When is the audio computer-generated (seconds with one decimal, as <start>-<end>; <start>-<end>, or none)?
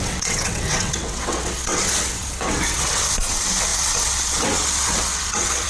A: 0.0-5.7